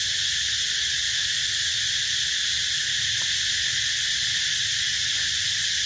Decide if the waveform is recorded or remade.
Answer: recorded